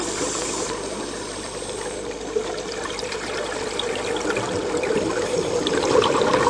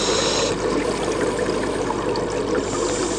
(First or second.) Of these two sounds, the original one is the second